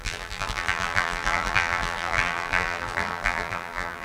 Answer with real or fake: fake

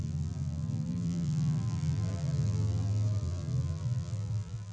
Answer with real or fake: fake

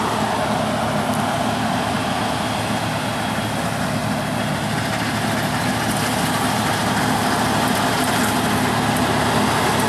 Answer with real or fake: real